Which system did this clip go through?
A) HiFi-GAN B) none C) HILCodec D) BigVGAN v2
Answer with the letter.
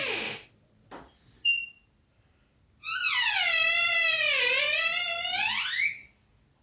B